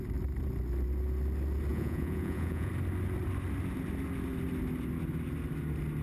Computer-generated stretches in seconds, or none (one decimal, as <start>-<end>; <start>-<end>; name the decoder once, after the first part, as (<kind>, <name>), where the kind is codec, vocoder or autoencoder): 1.7-2.7 (vocoder, Vocos)